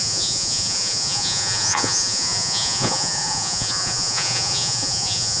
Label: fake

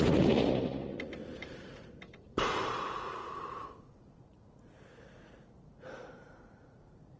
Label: fake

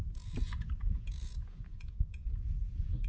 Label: fake